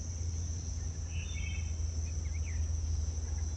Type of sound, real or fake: real